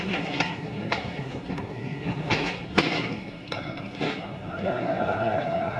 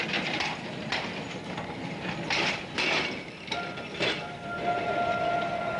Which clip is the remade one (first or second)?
first